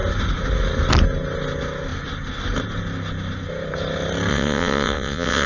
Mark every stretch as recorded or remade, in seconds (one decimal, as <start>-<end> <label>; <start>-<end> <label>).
0.0-4.3 recorded; 4.3-5.5 remade